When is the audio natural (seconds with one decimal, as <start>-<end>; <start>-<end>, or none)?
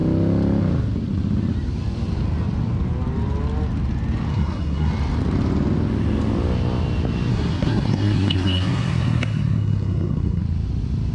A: 0.0-4.3; 4.9-7.3; 10.4-11.1